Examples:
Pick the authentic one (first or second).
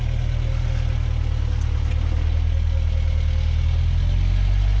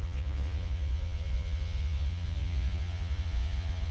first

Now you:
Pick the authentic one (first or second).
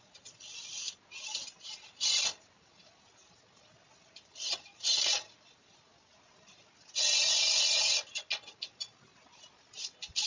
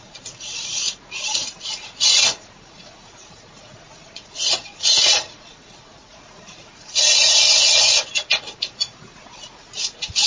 first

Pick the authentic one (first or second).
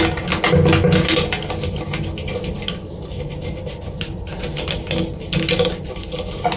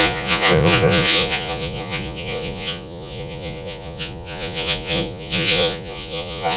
first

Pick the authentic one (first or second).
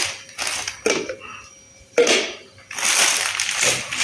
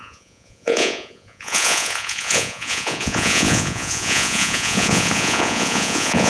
first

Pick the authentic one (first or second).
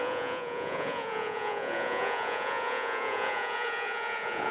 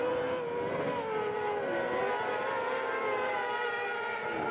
second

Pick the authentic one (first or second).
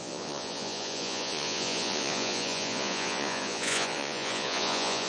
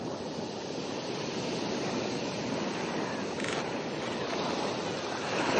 second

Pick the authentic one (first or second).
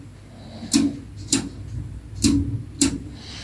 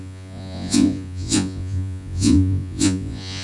first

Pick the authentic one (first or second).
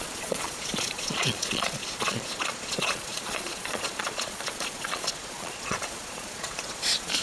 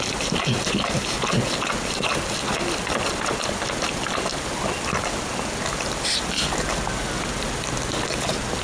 second